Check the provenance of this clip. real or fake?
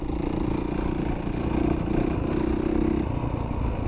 real